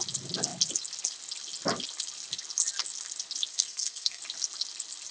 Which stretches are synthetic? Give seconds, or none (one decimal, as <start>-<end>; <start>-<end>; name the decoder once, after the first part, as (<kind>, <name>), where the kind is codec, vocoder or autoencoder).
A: 3.5-4.2 (codec, SNAC)